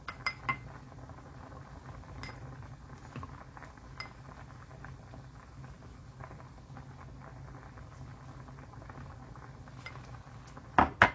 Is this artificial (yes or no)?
no